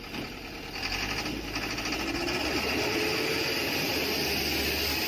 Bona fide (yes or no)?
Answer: yes